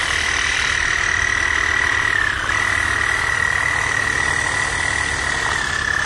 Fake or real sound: real